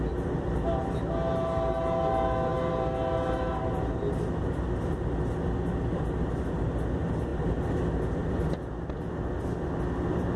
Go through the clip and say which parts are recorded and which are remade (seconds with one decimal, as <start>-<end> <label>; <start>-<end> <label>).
0.0-10.4 recorded